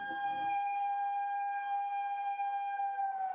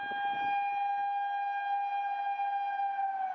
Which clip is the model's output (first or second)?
first